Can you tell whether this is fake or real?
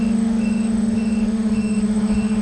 fake